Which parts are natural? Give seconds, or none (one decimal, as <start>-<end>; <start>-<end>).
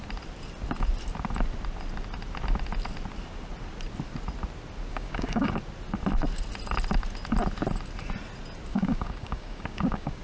0.0-4.9; 5.5-8.7